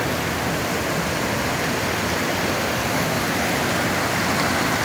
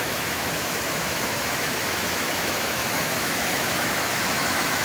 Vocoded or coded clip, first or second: second